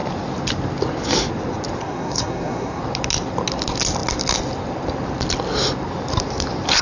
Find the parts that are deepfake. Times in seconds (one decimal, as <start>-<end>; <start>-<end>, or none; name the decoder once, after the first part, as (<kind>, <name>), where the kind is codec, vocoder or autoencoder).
1.8-2.8 (codec, SNAC)